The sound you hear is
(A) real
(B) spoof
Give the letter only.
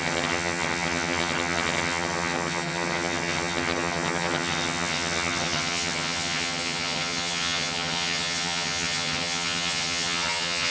B